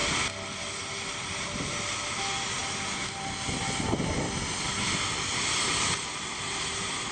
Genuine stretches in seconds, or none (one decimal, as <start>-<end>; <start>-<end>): 0.0-7.1